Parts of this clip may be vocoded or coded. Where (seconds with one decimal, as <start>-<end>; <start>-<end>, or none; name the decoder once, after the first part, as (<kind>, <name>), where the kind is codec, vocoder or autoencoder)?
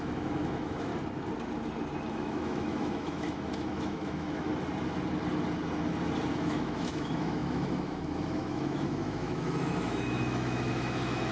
0.0-0.9 (autoencoder, DAC-VAE); 2.1-4.5; 6.3-11.3